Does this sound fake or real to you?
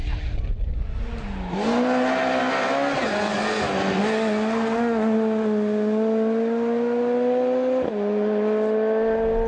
real